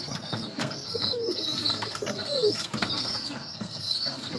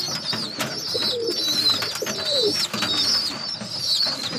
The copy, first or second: first